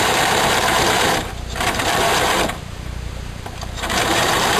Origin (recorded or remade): remade